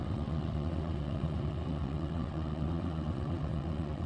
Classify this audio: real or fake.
fake